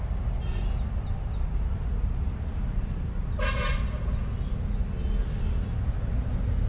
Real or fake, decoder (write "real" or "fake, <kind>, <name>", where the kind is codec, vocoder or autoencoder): real